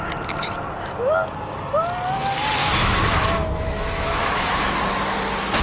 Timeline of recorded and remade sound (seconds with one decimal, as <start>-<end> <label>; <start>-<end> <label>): 0.0-2.6 recorded; 2.6-4.7 remade; 4.7-5.6 recorded